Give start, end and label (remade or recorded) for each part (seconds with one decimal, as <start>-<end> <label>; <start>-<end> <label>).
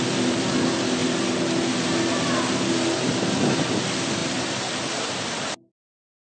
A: 0.0-6.3 recorded